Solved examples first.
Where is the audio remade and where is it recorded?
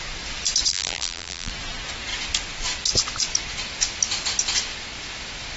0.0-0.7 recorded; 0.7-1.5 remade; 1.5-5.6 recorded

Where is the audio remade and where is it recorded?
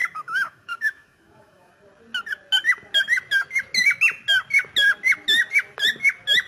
0.0-1.7 remade; 1.7-6.5 recorded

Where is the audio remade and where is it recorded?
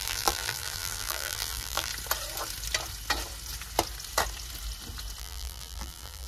0.0-1.9 remade; 1.9-5.2 recorded; 5.2-6.3 remade